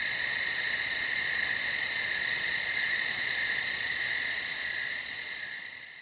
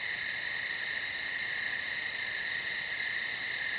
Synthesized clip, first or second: first